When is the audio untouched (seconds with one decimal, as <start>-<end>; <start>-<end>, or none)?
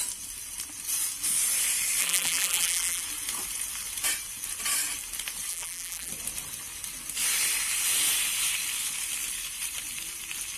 0.0-2.0; 3.0-5.5; 6.1-10.6